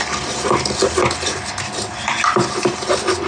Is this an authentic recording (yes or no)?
yes